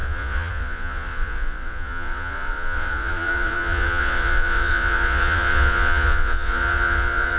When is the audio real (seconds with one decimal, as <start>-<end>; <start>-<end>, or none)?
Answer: none